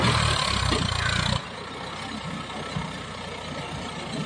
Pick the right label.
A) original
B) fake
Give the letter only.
A